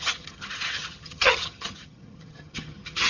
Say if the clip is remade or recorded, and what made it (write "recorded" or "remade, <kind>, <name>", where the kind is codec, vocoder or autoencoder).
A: remade, vocoder, HiFi-GAN